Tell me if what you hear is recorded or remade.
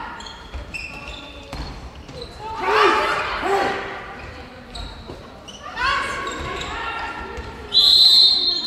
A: remade